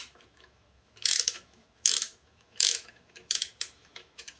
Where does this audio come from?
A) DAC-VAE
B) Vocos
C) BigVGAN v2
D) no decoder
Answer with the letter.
A